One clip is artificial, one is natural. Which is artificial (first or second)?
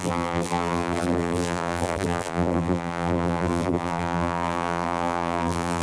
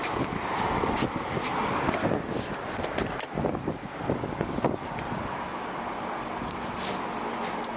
first